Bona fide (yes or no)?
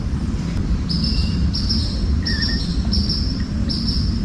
no